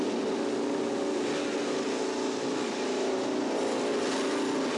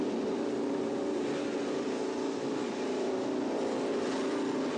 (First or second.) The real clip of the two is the first